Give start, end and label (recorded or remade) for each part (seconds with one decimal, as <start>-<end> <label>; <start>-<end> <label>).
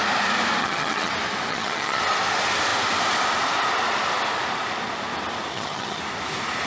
0.0-0.6 recorded; 0.6-1.1 remade; 1.1-1.5 recorded; 1.5-2.0 remade; 2.0-5.5 recorded; 5.5-6.0 remade; 6.0-6.7 recorded